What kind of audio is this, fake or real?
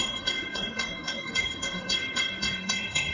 fake